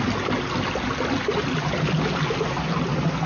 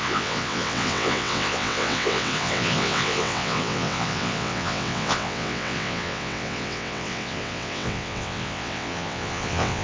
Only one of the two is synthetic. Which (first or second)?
second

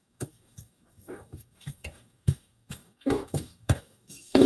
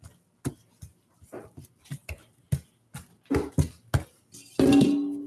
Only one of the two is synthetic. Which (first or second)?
first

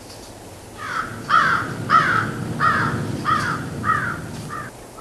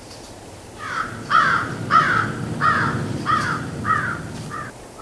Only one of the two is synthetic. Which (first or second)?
second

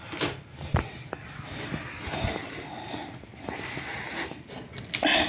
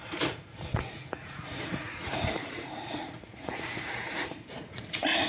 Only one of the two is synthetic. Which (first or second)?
second